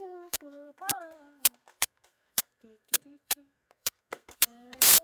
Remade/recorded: remade